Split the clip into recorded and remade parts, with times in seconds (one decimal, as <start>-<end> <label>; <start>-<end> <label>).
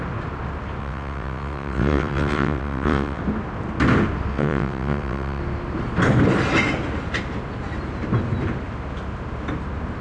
0.0-0.8 recorded; 0.8-3.2 remade; 3.2-4.3 recorded; 4.3-5.4 remade; 5.4-10.0 recorded